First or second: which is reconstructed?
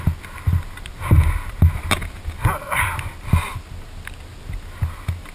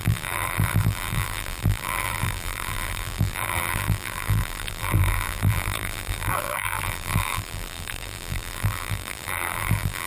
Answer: second